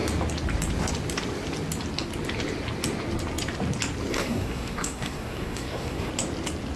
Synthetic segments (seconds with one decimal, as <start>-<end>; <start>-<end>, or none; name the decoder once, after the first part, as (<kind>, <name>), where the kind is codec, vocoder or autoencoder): 4.1-6.1 (codec, SNAC)